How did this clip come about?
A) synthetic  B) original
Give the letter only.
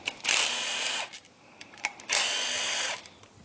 B